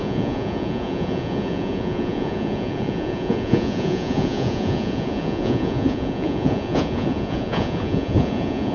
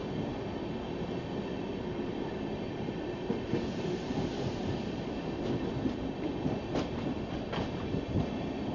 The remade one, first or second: first